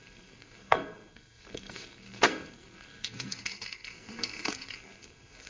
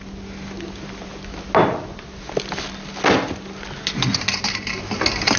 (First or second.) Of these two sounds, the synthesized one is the first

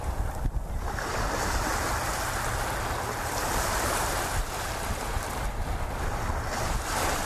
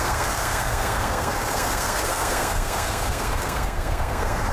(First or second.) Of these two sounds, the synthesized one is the second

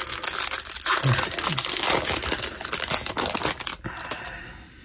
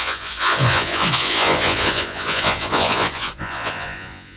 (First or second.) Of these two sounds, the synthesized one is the second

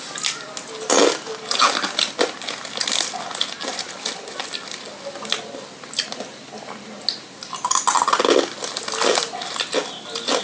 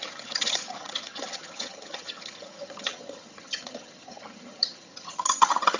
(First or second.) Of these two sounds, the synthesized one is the second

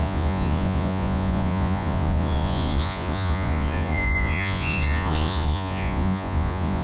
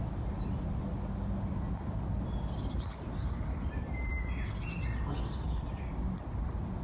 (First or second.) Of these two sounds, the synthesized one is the first